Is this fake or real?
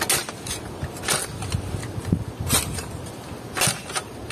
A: real